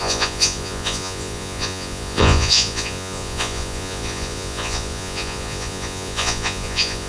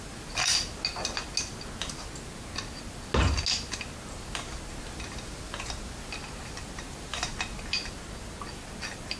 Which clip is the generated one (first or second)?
first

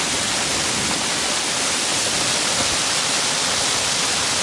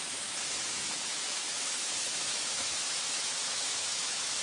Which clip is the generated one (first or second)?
second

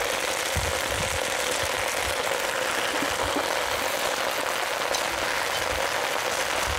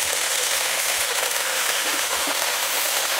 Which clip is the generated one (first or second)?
second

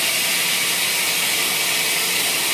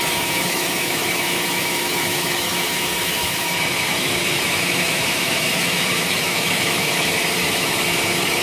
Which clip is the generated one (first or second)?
second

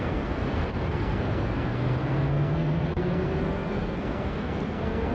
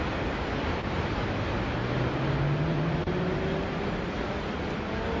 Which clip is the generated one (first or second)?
first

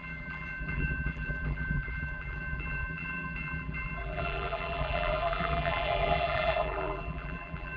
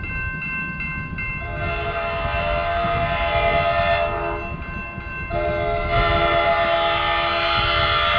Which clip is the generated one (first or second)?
first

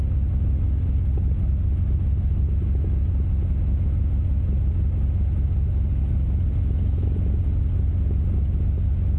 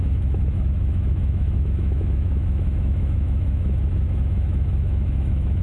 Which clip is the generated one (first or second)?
second